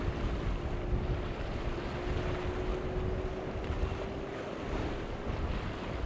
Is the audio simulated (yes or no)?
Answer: no